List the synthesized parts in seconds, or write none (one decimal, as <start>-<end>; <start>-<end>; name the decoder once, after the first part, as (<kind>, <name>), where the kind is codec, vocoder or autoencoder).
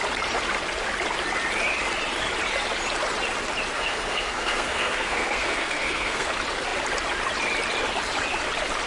3.7-6.3 (codec, SNAC)